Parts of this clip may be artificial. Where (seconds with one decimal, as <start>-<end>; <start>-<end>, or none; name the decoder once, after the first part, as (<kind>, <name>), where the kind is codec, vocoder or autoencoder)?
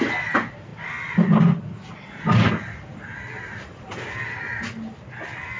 none